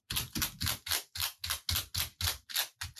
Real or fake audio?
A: real